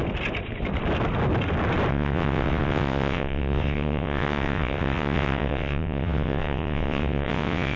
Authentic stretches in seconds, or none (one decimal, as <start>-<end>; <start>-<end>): 0.0-1.9